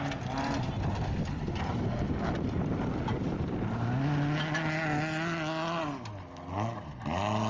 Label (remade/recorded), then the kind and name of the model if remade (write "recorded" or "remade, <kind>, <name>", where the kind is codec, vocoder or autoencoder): recorded